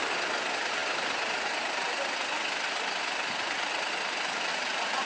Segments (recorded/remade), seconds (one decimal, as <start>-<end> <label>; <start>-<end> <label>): 0.0-4.5 recorded; 4.5-5.1 remade